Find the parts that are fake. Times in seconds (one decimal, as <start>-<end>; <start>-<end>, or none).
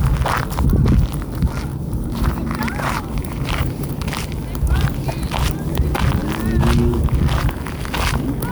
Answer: 1.7-3.9